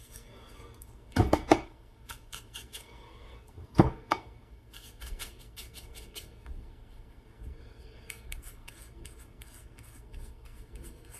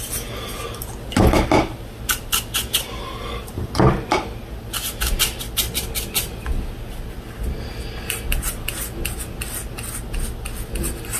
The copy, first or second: first